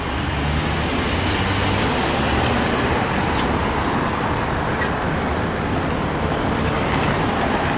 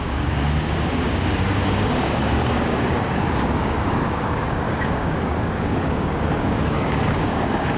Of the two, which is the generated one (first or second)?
second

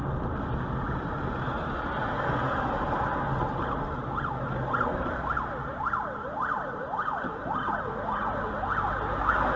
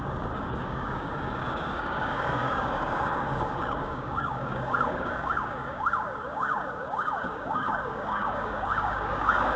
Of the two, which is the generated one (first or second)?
second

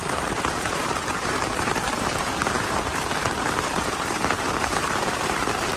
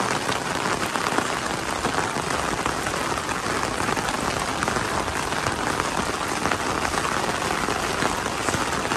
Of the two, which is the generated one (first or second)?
first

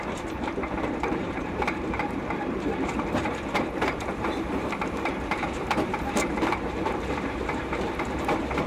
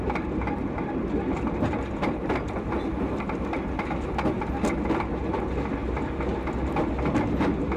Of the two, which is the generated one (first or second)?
first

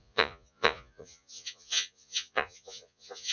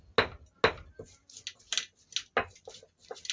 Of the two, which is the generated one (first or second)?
first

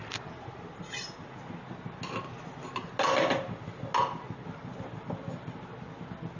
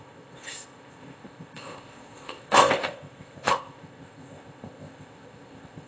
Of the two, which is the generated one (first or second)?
second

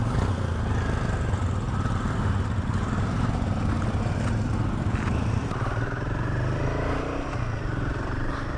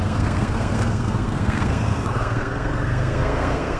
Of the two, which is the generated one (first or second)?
second